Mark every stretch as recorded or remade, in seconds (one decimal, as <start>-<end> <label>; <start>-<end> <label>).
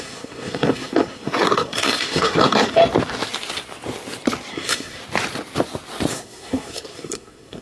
0.0-2.8 remade; 2.8-4.5 recorded; 4.5-5.0 remade; 5.0-6.1 recorded; 6.1-7.6 remade